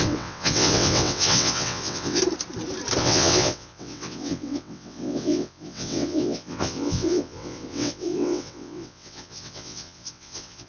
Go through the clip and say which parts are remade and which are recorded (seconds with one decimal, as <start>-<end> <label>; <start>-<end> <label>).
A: 0.0-2.2 remade; 2.2-3.0 recorded; 3.0-10.7 remade

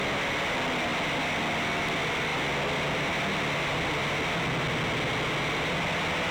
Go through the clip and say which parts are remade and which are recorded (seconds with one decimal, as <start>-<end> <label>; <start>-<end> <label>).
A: 0.0-6.3 recorded

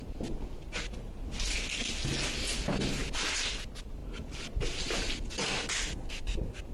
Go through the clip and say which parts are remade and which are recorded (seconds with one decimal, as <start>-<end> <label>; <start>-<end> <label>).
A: 0.0-6.7 recorded

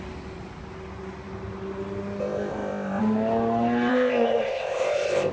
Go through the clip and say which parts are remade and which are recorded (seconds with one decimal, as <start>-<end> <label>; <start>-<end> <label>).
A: 0.0-2.2 recorded; 2.2-3.0 remade; 3.0-3.9 recorded; 3.9-5.3 remade

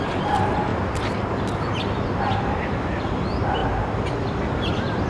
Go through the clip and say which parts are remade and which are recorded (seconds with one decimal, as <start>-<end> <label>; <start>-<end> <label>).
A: 0.0-5.1 recorded

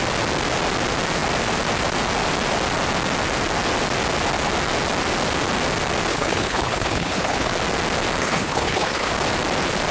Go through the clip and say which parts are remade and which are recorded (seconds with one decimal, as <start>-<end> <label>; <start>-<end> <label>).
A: 0.0-6.1 recorded; 6.1-7.5 remade; 7.5-8.2 recorded; 8.2-9.1 remade; 9.1-9.9 recorded